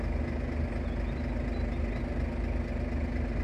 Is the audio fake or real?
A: real